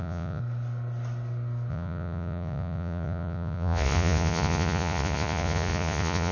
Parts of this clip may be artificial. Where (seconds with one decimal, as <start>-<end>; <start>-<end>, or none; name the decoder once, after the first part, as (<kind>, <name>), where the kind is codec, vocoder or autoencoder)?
0.0-0.4 (vocoder, Vocos); 1.7-6.3